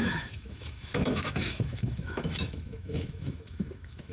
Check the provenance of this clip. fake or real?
fake